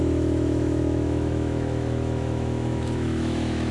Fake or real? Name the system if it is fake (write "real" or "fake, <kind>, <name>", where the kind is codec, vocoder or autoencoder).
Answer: fake, autoencoder, DAC-VAE